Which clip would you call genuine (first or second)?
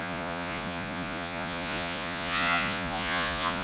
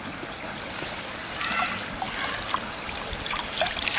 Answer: second